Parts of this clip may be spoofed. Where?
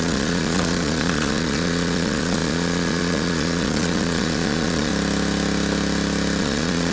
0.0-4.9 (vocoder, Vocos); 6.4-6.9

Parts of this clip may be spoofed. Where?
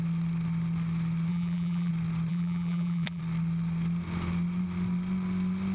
1.3-1.9 (vocoder, BigVGAN v2); 2.3-3.2